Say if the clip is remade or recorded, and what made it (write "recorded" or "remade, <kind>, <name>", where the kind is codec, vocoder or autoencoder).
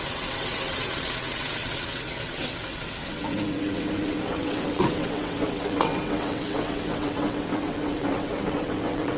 remade, vocoder, WaveNeXt